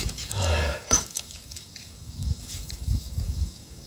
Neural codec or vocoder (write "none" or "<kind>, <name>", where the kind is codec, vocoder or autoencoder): codec, DAC